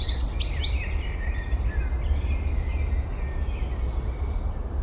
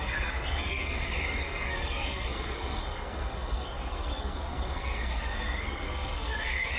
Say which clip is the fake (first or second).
second